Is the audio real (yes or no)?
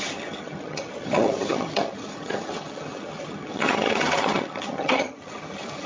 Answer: no